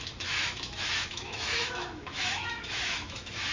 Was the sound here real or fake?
fake